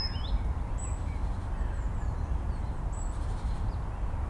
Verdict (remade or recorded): recorded